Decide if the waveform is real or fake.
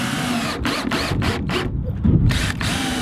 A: real